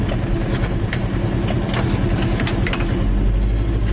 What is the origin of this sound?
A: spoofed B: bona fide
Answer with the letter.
B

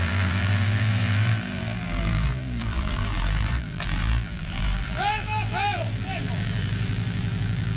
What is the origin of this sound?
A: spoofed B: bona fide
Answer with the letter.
A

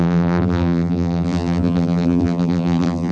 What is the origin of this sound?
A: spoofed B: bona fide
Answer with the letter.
A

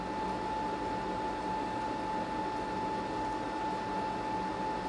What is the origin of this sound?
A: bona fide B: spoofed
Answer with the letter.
A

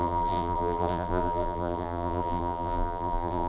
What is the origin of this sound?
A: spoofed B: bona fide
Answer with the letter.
A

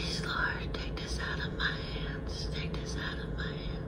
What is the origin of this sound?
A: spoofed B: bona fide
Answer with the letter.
A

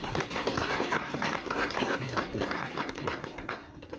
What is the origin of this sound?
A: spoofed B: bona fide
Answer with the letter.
A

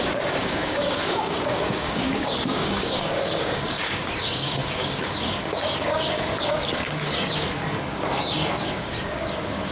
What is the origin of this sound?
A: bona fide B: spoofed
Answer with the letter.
B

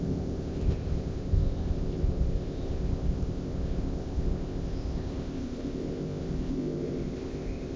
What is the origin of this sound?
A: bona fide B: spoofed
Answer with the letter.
B